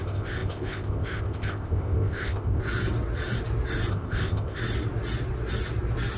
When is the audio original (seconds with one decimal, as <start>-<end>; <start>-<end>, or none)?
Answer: 2.6-3.9; 4.6-6.2